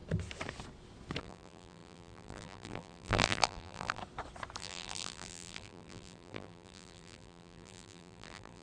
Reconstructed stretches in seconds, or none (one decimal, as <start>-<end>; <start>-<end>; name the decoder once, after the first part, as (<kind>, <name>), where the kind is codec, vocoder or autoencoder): 1.2-4.0 (vocoder, BigVGAN v2); 4.6-8.6

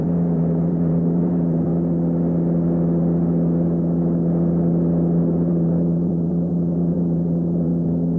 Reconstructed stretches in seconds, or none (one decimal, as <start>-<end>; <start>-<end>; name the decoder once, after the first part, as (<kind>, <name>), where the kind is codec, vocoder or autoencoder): 0.0-1.7 (vocoder, BigVGAN v2); 5.5-7.7

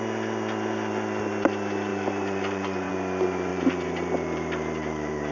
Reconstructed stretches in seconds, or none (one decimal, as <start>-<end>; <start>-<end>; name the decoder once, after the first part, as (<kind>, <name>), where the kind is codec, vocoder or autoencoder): 1.9-2.9 (vocoder, BigVGAN v2); 3.5-5.3

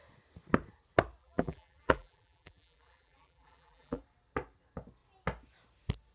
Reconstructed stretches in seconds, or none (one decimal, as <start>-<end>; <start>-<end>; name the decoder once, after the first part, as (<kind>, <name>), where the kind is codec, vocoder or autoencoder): 1.2-4.0 (vocoder, BigVGAN v2)

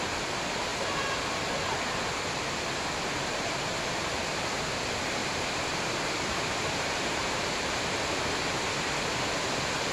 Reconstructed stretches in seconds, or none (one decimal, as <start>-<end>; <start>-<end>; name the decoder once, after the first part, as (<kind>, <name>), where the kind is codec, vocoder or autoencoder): 5.2-8.1 (vocoder, BigVGAN v2)

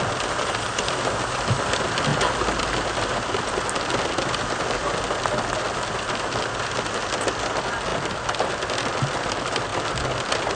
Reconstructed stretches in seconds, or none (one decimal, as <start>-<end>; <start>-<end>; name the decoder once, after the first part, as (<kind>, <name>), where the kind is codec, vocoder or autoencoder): 7.9-8.5 (vocoder, BigVGAN v2); 9.7-10.5

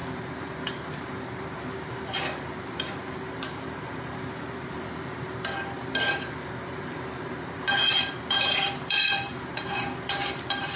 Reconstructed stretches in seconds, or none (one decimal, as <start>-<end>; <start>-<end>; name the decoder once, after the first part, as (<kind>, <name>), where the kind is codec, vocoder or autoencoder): 0.0-10.8 (vocoder, BigVGAN v2)

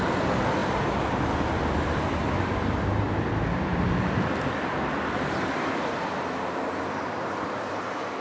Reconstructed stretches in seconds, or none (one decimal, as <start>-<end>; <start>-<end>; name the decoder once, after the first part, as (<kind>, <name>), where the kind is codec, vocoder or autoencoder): 0.0-3.7 (vocoder, BigVGAN v2); 4.9-8.2